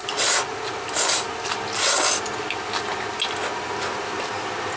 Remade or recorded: recorded